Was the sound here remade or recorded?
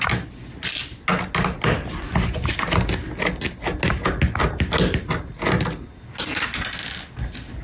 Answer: recorded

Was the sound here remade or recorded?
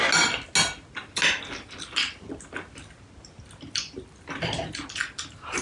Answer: recorded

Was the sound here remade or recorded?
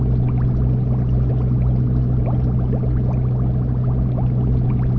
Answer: recorded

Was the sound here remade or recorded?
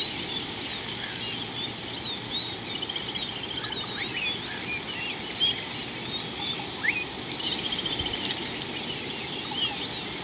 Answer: recorded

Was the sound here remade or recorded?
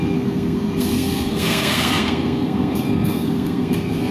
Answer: remade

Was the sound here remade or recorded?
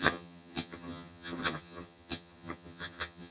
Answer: remade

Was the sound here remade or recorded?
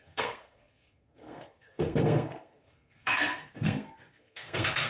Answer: remade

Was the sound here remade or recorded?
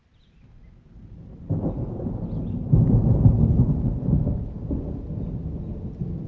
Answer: recorded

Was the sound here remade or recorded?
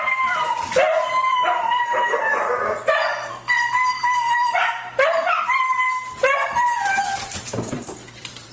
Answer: remade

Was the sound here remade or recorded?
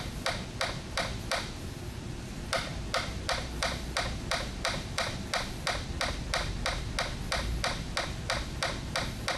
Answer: recorded